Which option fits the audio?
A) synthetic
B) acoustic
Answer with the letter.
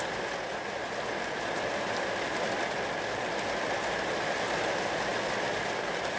B